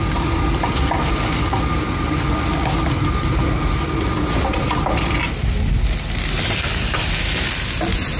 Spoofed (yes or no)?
no